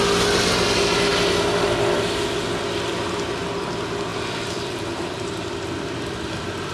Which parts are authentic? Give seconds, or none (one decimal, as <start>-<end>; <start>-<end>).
0.0-4.1; 6.0-6.7